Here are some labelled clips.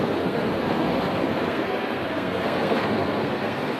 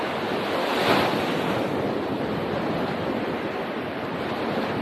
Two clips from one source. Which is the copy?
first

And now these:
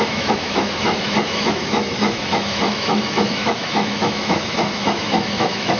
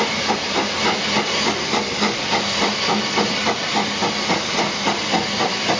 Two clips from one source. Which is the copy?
first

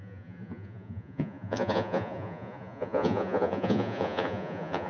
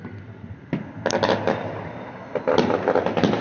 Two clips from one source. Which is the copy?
first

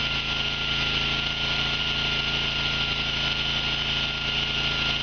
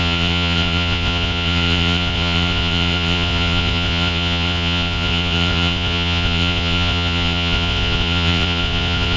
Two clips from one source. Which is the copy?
second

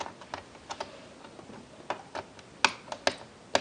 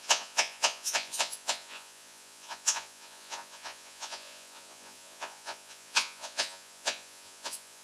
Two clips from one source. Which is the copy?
second